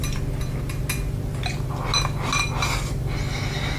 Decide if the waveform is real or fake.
real